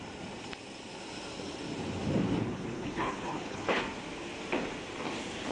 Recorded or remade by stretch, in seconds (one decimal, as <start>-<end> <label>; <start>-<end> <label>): 0.0-2.4 recorded; 2.4-3.8 remade; 3.8-5.5 recorded